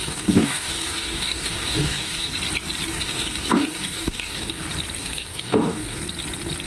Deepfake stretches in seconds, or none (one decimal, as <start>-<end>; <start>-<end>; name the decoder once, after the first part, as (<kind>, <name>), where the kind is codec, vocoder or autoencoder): 0.0-2.3 (codec, DAC); 2.9-4.6; 5.0-6.0